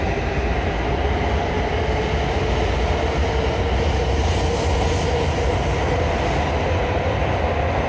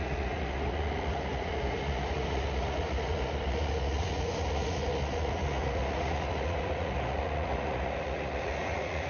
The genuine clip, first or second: first